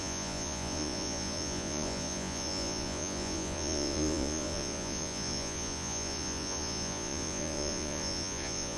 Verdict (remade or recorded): remade